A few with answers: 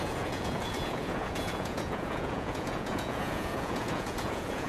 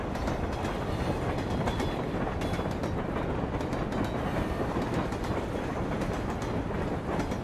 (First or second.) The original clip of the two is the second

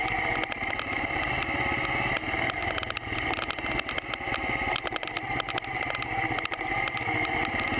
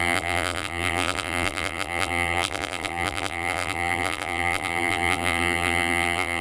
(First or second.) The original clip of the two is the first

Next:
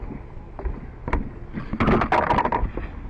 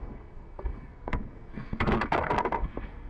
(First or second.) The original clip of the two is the first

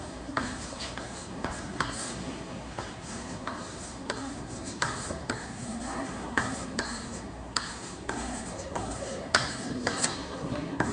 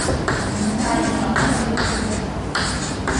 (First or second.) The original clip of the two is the second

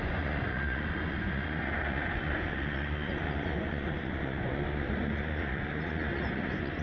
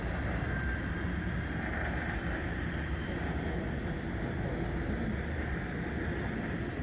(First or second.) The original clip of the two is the second